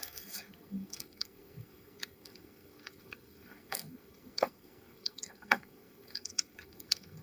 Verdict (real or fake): fake